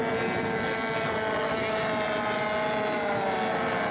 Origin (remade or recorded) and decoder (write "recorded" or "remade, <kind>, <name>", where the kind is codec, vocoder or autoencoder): recorded